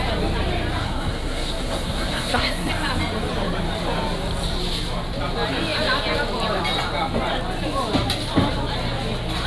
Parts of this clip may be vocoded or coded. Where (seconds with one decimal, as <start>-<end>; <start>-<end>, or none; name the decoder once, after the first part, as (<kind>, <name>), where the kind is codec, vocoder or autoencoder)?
0.8-2.7 (codec, SNAC)